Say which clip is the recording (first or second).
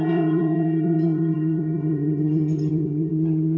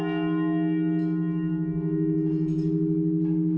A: second